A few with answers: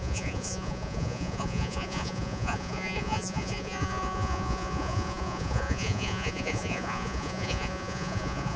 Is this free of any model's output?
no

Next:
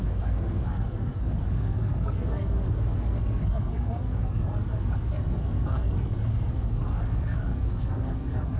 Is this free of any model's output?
no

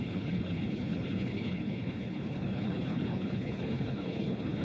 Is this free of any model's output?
no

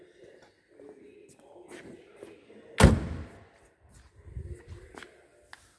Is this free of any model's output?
yes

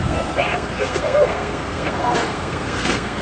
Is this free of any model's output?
no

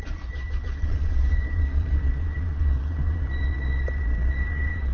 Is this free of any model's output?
no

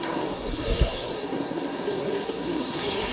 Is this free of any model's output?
no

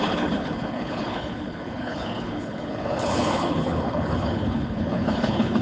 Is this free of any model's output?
no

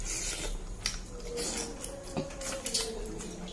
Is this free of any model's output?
yes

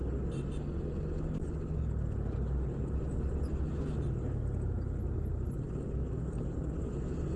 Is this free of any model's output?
yes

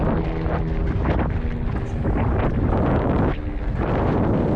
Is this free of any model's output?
yes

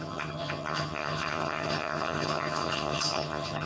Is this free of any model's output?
no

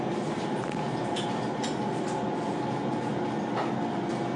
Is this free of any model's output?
yes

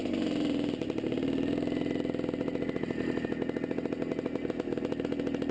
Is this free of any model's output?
yes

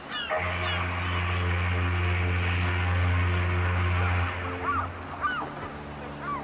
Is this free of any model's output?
yes